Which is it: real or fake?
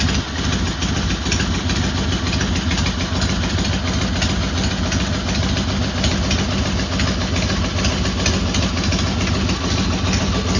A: real